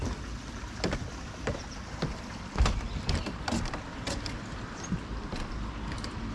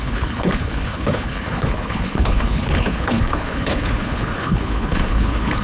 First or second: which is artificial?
second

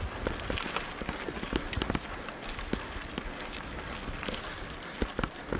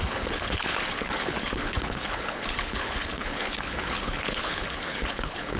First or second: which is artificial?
second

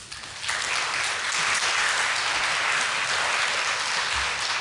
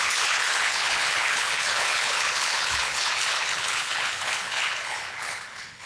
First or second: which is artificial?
second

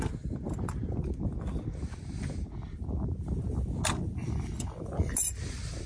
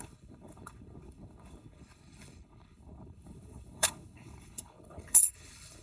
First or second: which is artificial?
second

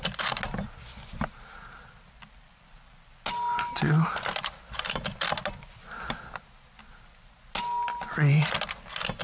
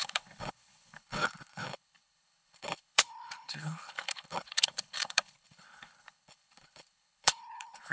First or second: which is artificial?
second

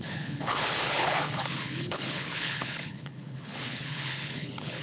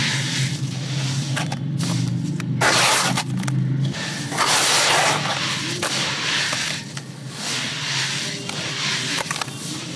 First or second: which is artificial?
first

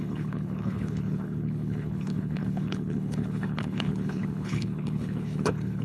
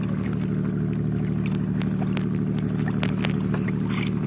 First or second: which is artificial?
first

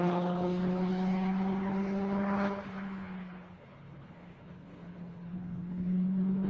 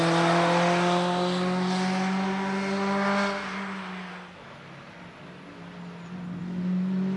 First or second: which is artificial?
first